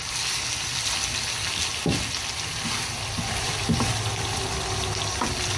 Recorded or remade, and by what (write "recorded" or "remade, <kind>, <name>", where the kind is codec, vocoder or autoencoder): recorded